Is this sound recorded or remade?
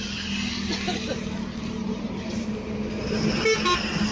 recorded